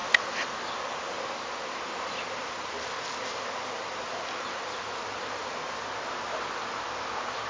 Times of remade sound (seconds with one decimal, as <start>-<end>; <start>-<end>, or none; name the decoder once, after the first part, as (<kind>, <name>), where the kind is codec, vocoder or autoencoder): none